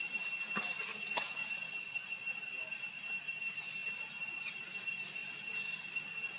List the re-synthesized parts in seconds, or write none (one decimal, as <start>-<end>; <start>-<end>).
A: 0.9-1.6